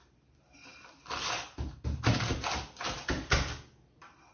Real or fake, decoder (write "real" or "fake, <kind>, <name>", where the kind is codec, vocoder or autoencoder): real